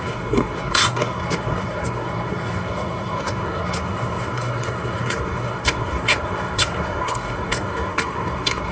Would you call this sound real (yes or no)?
no